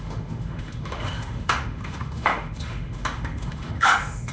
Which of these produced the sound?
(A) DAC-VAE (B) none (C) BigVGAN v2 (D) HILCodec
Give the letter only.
A